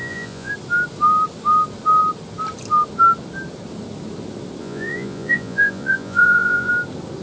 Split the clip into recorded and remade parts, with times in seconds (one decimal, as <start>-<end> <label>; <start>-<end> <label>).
0.0-0.5 remade; 0.5-4.6 recorded; 4.6-6.7 remade; 6.7-7.2 recorded